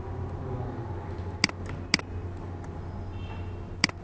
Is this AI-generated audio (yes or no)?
no